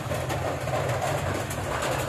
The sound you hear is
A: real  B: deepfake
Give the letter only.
A